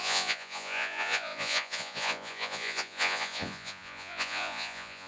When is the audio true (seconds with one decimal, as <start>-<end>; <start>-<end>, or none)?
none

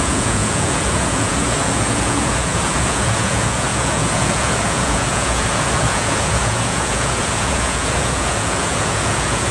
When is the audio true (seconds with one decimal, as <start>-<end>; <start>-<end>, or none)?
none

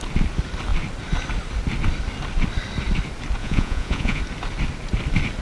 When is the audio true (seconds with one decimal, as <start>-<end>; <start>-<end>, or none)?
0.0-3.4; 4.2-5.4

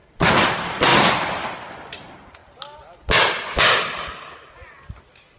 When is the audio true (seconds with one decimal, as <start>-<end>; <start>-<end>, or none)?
0.0-5.4